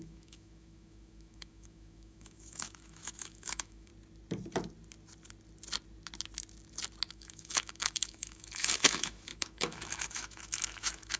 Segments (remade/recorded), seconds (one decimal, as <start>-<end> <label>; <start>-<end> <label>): 0.0-3.9 remade; 3.9-7.1 recorded; 7.1-11.2 remade